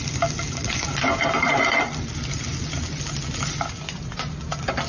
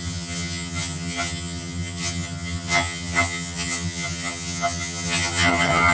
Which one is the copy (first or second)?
second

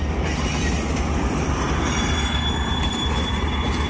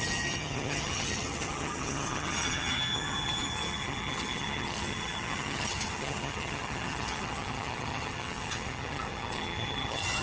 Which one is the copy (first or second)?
second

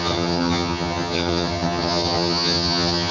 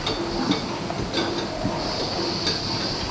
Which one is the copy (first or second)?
first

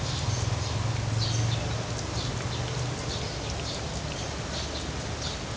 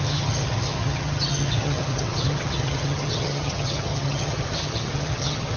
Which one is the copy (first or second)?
second